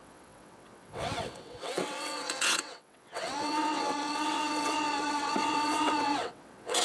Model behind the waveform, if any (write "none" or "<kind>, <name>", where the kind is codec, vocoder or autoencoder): vocoder, WaveNeXt